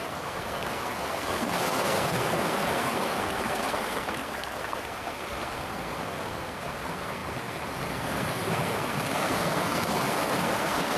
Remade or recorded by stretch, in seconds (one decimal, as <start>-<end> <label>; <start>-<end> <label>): 0.0-11.0 remade